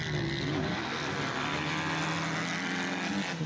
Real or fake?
real